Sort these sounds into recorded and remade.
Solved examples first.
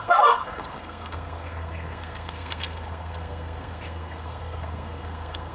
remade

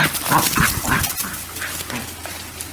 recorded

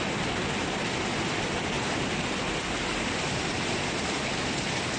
recorded